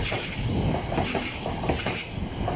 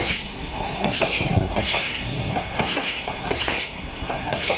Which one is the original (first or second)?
first